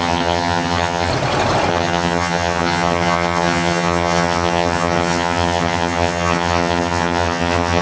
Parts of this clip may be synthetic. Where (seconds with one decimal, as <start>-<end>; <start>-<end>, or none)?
0.0-1.1; 1.7-7.8

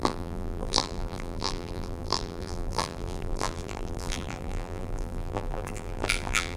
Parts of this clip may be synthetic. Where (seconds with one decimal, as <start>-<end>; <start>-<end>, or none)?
0.0-6.6

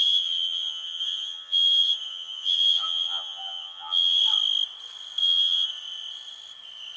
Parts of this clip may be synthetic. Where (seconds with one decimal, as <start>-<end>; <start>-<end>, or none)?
0.0-4.2; 5.2-5.7

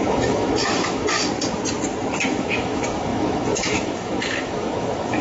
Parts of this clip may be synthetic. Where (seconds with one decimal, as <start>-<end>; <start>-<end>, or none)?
0.0-1.3; 2.3-5.2

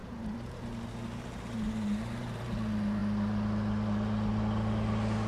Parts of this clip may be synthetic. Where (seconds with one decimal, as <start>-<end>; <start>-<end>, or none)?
0.0-2.4

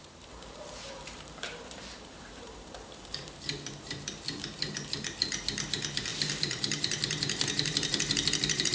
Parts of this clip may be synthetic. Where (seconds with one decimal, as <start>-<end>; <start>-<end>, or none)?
0.0-8.7

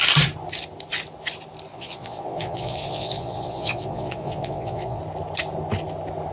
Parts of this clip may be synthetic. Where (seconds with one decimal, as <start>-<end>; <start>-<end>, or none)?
1.7-5.0